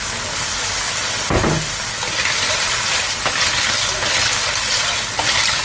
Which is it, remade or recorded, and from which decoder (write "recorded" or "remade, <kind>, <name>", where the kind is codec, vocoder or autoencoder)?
recorded